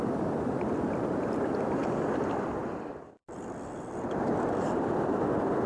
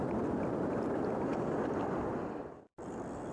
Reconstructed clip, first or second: first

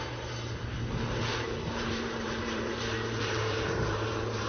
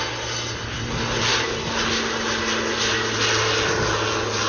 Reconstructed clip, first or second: first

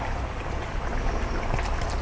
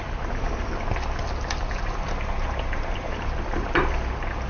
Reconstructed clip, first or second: first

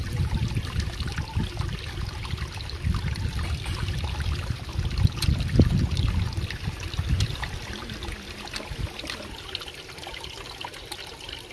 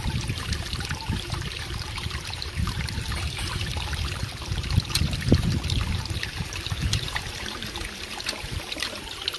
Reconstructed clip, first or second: second